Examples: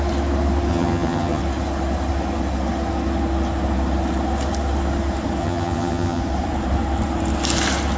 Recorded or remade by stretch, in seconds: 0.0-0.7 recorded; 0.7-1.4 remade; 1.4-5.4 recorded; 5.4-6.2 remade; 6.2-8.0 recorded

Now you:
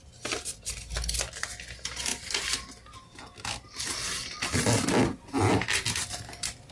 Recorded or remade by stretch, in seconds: 0.0-6.7 recorded

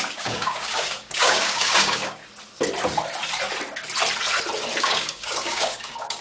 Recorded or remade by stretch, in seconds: 0.0-2.2 remade; 2.2-4.8 recorded; 4.8-6.2 remade

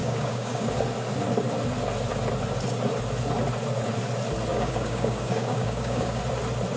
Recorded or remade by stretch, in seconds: 0.0-0.7 remade; 0.7-4.5 recorded; 4.5-6.2 remade; 6.2-6.8 recorded

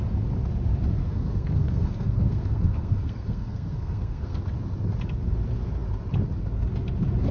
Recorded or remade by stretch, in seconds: 0.0-1.0 recorded; 1.0-4.4 remade; 4.4-7.3 recorded

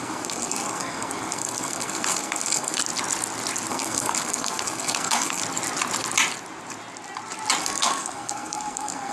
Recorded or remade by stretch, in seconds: 0.0-2.8 remade; 2.8-3.7 recorded; 3.7-5.4 remade; 5.4-7.6 recorded; 7.6-9.1 remade

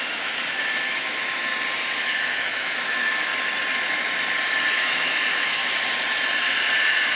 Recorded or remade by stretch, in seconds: 0.0-1.5 remade; 1.5-2.0 recorded; 2.0-3.3 remade; 3.3-4.7 recorded; 4.7-5.6 remade; 5.6-6.8 recorded; 6.8-7.2 remade